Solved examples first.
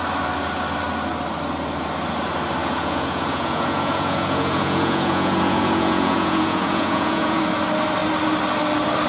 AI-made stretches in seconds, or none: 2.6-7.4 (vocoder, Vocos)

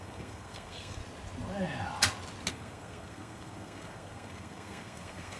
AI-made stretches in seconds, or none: 0.0-1.0 (codec, SNAC); 2.5-5.4

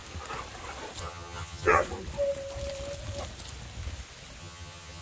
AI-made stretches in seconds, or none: 1.0-1.8 (vocoder, HiFi-GAN); 4.4-5.0

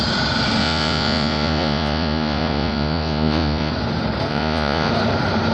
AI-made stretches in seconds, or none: 0.6-3.7 (vocoder, Vocos); 4.3-4.9